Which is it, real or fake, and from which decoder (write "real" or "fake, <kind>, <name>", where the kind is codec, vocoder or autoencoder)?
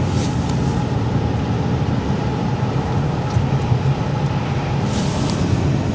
real